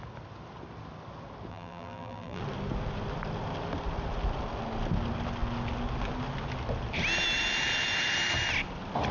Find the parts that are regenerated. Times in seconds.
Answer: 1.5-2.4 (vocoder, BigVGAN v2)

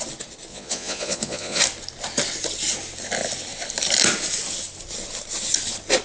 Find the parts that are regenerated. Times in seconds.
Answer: 0.5-1.6 (vocoder, Vocos)